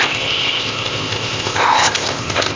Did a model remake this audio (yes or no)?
yes